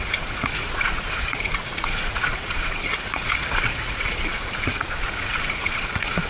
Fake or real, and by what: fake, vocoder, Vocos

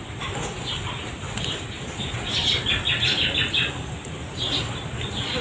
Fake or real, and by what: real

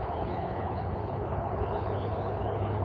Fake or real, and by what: fake, codec, HILCodec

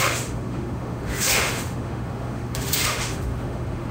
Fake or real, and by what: fake, autoencoder, DAC-VAE